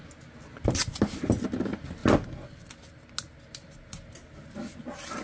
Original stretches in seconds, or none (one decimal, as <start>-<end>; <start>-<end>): 0.0-5.2